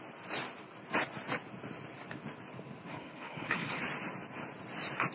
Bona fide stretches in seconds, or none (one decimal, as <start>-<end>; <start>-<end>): 0.0-2.9; 3.8-5.1